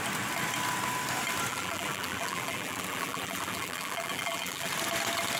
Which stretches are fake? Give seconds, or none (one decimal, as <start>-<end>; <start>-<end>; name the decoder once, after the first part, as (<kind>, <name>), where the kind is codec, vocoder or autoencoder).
1.5-4.7 (vocoder, BigVGAN v2)